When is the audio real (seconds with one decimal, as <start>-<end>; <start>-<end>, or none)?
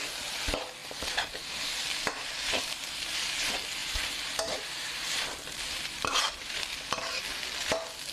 0.0-0.8; 3.1-3.8; 7.0-8.1